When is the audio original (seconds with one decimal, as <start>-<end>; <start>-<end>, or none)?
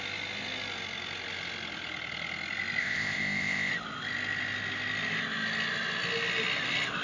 0.0-2.8; 3.7-7.0